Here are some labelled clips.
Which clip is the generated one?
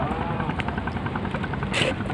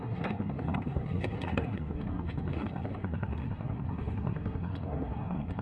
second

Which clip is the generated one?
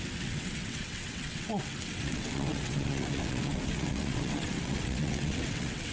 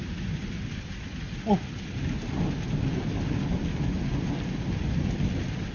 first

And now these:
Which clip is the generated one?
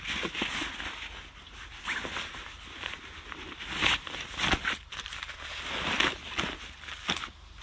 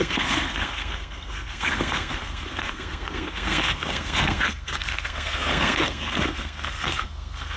second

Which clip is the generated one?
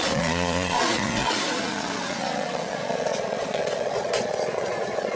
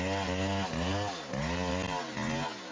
first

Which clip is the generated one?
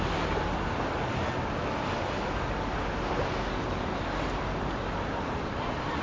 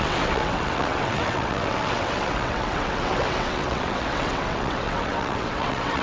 second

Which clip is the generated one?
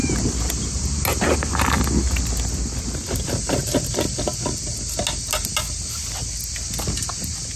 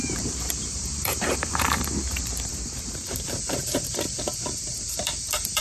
second